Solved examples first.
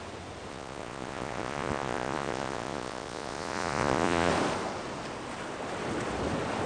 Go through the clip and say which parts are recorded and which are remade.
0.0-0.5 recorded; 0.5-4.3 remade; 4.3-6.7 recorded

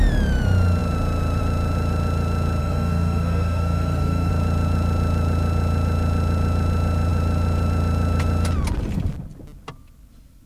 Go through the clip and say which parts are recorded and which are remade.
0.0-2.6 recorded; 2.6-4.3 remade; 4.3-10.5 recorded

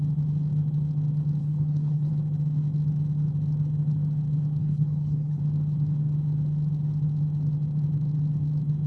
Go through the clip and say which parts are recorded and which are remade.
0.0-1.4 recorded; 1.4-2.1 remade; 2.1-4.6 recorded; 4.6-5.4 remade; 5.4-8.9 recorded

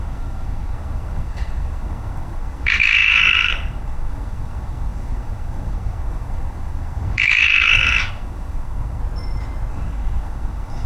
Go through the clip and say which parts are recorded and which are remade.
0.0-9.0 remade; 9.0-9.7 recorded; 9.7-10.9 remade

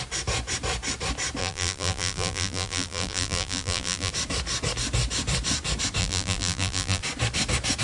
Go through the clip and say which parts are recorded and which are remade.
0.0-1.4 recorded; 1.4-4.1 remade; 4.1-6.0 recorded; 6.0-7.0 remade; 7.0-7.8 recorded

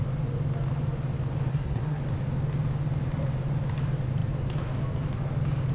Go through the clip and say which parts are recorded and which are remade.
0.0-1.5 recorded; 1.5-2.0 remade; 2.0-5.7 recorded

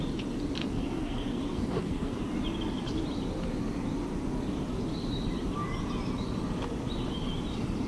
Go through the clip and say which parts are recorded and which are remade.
0.0-0.6 recorded; 0.6-2.2 remade; 2.2-7.9 recorded

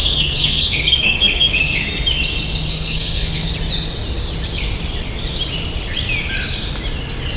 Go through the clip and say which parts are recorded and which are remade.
0.0-1.9 remade; 1.9-2.7 recorded; 2.7-3.5 remade; 3.5-7.4 recorded